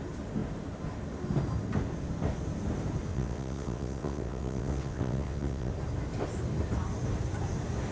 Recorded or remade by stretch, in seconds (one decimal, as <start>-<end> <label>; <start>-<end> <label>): 0.0-3.1 recorded; 3.1-5.7 remade; 5.7-7.9 recorded